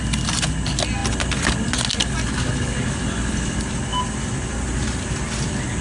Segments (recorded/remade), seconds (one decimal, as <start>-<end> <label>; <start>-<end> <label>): 0.0-5.8 recorded